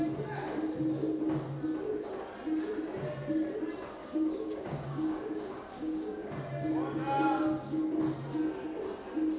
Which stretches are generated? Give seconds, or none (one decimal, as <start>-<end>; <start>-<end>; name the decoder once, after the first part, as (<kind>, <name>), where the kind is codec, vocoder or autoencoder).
4.0-6.3 (codec, DAC)